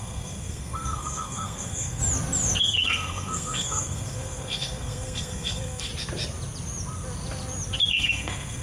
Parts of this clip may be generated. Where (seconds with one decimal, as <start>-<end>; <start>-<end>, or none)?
0.0-2.0; 2.6-5.9; 7.9-8.6